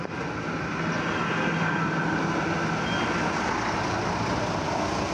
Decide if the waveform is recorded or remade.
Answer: recorded